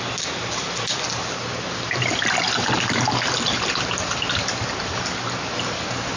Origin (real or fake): real